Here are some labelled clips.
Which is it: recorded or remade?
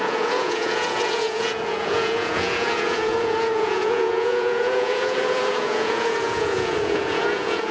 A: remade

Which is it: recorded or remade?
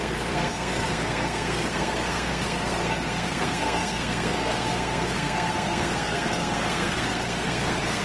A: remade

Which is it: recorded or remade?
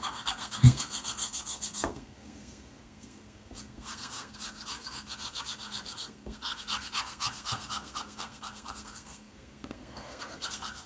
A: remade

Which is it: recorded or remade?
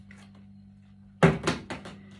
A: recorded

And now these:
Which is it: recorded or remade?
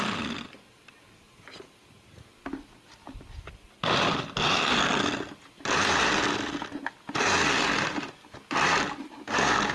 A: recorded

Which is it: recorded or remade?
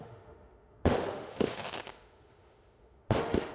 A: remade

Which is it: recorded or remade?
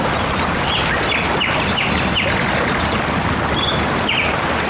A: recorded